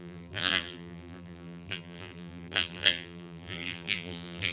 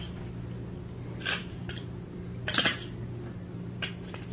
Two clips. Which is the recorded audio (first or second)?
second